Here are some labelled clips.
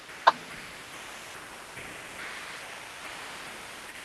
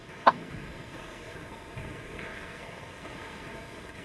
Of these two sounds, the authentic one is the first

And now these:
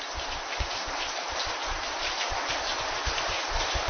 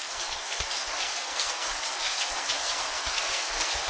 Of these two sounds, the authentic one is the first